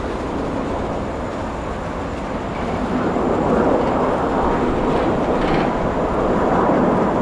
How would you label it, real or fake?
real